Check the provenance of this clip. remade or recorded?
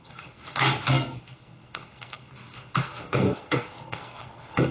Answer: remade